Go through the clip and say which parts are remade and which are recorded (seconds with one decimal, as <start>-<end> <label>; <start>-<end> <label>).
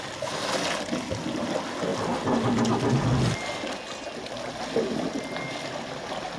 0.0-6.4 recorded